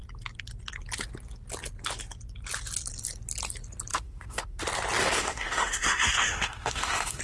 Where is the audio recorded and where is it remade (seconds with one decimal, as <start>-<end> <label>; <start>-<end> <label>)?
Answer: 0.0-3.9 recorded; 3.9-4.6 remade; 4.6-5.0 recorded; 5.0-7.2 remade